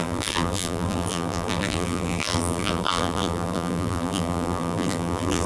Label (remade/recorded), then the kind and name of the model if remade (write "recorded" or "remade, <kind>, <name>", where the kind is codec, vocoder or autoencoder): remade, vocoder, BigVGAN v2